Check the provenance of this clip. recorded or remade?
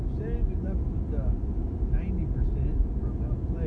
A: recorded